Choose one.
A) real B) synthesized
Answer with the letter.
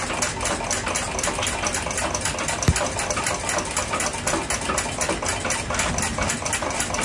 A